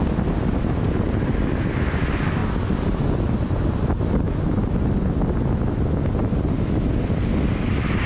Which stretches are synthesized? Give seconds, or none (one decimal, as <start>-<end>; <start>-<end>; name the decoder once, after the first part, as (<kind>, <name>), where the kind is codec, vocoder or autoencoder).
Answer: none

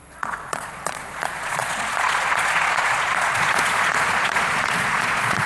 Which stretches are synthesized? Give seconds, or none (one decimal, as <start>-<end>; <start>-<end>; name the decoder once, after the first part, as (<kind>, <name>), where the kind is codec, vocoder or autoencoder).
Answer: 0.0-5.5 (vocoder, Vocos)

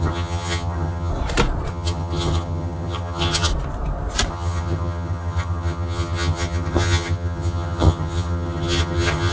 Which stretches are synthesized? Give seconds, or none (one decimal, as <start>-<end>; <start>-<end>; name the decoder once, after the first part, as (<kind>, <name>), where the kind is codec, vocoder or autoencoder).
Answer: 0.0-1.1 (vocoder, HiFi-GAN); 1.7-3.5; 4.3-9.3

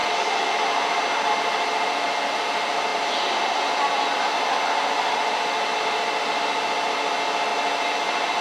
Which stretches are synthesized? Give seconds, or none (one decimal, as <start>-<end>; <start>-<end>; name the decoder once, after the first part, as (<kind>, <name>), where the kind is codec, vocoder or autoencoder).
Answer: none

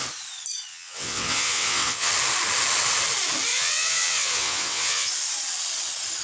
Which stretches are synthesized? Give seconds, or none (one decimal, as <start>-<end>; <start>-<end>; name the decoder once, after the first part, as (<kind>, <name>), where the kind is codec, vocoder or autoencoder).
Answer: 0.7-2.1 (vocoder, WaveNeXt); 3.5-5.1

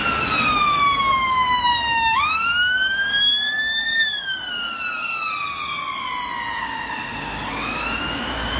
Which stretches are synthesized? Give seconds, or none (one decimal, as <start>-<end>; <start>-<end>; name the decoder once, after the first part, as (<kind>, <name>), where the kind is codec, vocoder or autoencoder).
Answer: 0.5-5.3 (codec, DAC); 6.6-8.6

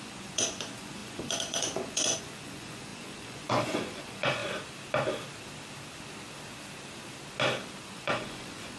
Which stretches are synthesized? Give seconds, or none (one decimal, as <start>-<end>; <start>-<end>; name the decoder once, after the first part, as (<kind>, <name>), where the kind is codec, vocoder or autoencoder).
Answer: 0.0-4.4 (vocoder, Vocos); 7.8-8.8

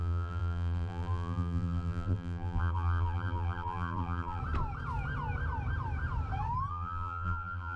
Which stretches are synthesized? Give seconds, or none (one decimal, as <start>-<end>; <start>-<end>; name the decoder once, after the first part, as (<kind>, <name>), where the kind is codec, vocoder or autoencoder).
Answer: 0.0-4.4 (vocoder, BigVGAN v2); 6.7-7.8